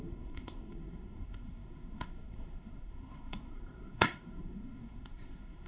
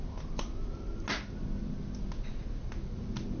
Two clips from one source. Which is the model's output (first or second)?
first